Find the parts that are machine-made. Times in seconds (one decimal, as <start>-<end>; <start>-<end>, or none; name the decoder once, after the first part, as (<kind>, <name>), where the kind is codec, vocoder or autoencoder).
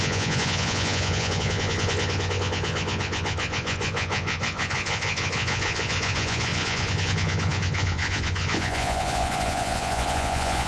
0.0-10.7 (vocoder, Vocos)